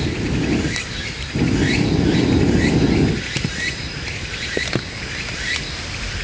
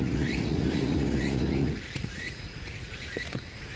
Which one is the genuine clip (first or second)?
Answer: first